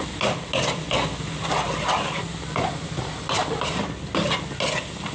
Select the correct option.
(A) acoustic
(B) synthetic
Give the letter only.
A